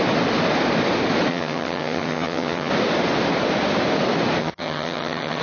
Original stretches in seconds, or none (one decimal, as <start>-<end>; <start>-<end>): 0.0-1.3; 2.7-4.4